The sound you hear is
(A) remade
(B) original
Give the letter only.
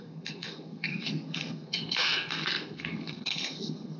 A